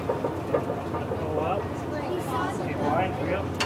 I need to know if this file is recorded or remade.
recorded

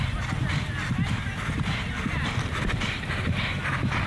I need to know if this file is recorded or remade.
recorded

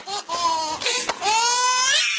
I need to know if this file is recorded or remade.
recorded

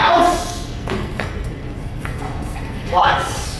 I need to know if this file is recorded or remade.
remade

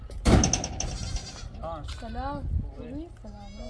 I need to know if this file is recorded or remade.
recorded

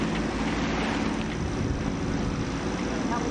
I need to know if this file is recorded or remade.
recorded